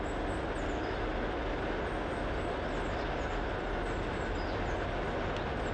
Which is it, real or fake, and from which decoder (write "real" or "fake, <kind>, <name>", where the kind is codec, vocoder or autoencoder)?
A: real